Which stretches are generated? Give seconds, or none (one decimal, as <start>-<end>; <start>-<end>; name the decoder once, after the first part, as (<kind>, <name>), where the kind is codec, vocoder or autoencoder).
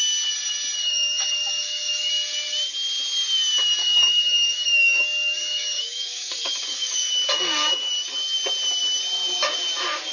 0.8-2.1 (codec, DAC); 3.8-7.9